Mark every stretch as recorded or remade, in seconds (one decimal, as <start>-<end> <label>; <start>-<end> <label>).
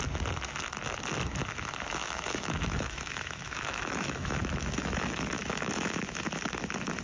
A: 0.0-2.0 recorded; 2.0-6.2 remade; 6.2-7.0 recorded